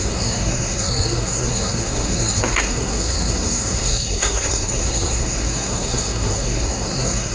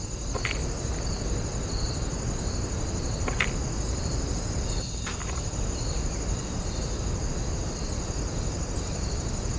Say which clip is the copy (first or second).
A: first